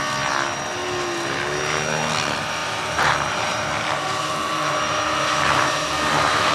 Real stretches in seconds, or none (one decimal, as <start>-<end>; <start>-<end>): 0.0-2.6